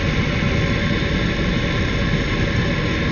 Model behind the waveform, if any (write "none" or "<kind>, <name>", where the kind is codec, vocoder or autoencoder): none